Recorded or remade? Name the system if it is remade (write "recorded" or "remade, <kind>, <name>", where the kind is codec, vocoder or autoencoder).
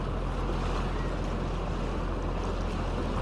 recorded